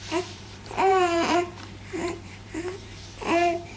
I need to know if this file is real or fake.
fake